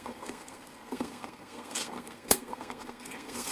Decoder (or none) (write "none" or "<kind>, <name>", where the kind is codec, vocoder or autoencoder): codec, SNAC